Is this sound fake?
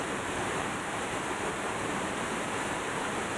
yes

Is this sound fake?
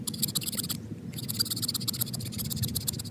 no